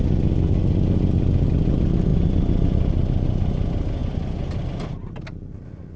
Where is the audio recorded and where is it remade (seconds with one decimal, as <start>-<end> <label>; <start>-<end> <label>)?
0.0-6.0 recorded